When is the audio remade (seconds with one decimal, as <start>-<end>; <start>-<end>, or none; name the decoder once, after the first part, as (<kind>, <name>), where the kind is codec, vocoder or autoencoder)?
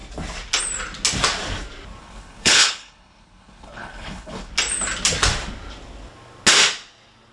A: 2.0-4.5 (codec, HILCodec)